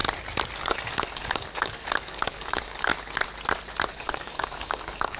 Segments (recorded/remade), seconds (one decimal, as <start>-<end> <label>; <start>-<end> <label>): 0.0-0.6 recorded; 0.6-2.9 remade; 2.9-3.9 recorded; 3.9-5.2 remade